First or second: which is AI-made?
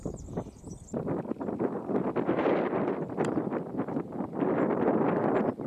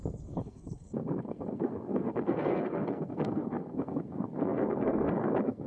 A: second